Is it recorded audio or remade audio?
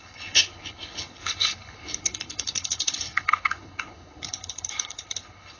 remade